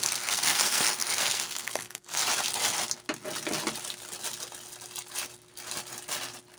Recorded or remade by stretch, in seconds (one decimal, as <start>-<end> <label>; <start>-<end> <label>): 0.0-2.2 remade; 2.2-6.6 recorded